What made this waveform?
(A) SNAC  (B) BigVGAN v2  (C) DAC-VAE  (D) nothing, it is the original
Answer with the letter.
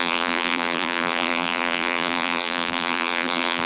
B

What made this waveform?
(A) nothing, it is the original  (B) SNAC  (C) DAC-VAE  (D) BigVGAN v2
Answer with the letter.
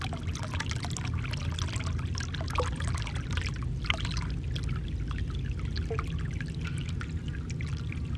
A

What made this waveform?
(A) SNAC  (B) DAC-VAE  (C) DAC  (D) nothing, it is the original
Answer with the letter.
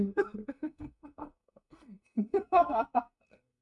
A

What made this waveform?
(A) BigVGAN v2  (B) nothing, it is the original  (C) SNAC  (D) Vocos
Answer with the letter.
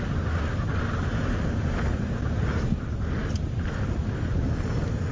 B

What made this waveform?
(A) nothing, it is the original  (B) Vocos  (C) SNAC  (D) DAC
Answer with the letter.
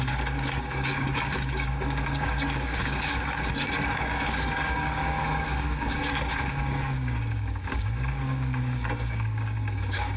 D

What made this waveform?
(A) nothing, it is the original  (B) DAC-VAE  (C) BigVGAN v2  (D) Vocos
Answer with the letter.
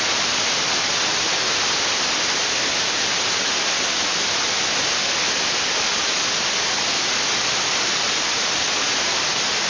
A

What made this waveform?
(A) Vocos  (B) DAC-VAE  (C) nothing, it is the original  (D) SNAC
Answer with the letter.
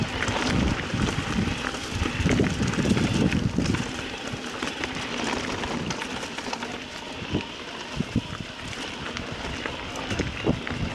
C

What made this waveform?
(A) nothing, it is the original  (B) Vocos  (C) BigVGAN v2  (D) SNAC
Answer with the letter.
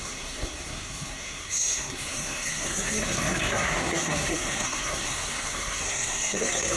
D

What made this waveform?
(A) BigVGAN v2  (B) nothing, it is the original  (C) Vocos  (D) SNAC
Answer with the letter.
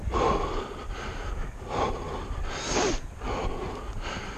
B